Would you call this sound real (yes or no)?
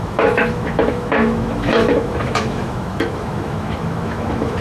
no